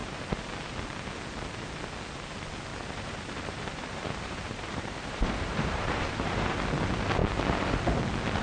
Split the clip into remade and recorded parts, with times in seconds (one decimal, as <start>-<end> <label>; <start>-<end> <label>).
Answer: 0.0-0.6 remade; 0.6-2.7 recorded; 2.7-6.7 remade; 6.7-8.4 recorded